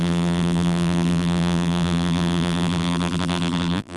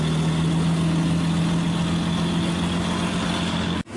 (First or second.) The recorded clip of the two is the second